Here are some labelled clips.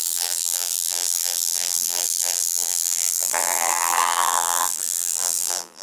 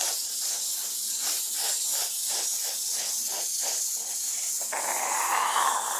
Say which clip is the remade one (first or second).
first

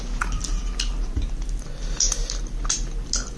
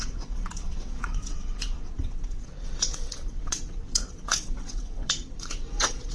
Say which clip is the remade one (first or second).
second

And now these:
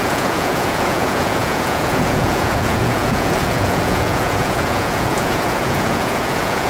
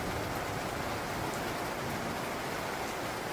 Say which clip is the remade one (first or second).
first